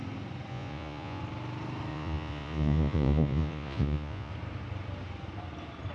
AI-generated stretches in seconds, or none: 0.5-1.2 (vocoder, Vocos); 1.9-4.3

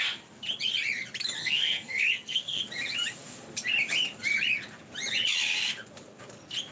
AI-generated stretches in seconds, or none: 1.4-2.6 (codec, SNAC)